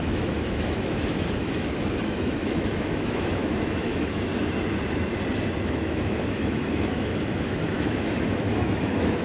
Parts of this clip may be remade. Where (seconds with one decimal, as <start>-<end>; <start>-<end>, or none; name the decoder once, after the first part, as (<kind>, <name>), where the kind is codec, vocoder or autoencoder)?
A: 0.0-4.3 (autoencoder, DAC-VAE); 5.6-9.2